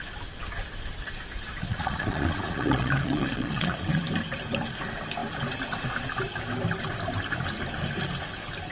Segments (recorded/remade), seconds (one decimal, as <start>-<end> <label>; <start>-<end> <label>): 0.0-1.7 recorded; 1.7-4.0 remade; 4.0-8.7 recorded